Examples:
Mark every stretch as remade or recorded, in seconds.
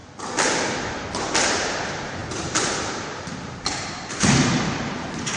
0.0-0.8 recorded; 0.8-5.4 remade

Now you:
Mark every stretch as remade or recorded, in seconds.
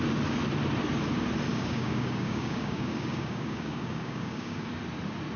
0.0-1.5 recorded; 1.5-4.7 remade; 4.7-5.4 recorded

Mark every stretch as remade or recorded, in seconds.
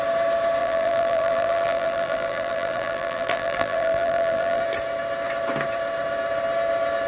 0.0-0.6 recorded; 0.6-4.6 remade; 4.6-7.1 recorded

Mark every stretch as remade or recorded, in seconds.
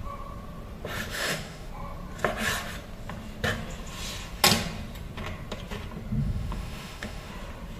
0.0-1.1 recorded; 1.1-1.7 remade; 1.7-6.2 recorded; 6.2-7.3 remade; 7.3-7.8 recorded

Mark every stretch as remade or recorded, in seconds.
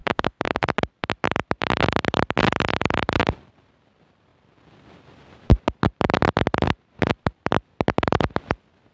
0.0-0.7 remade; 0.7-8.9 recorded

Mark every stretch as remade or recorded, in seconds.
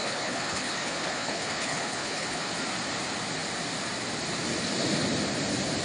0.0-2.5 remade; 2.5-5.8 recorded